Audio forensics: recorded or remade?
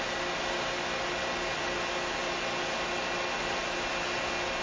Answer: recorded